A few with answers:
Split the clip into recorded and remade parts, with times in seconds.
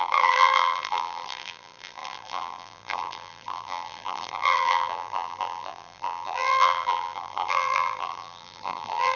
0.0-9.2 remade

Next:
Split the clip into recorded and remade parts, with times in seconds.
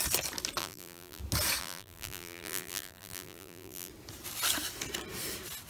0.0-0.6 recorded; 0.6-1.2 remade; 1.2-1.6 recorded; 1.6-3.9 remade; 3.9-5.7 recorded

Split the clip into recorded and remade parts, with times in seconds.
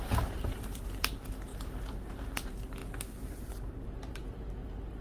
0.0-2.8 remade; 2.8-4.1 recorded; 4.1-5.0 remade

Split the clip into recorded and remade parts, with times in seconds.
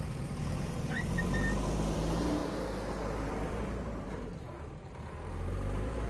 0.0-2.4 remade; 2.4-3.3 recorded; 3.3-6.1 remade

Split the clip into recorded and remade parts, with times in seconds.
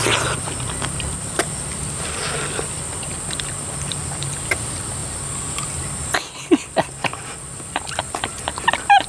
0.0-9.1 remade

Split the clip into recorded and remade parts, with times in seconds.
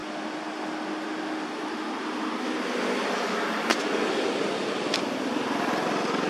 0.0-6.3 recorded